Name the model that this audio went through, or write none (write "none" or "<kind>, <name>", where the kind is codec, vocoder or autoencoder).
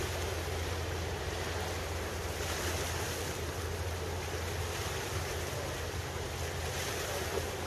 none